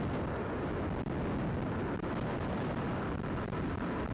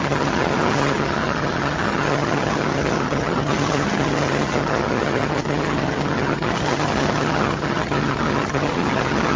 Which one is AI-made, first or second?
second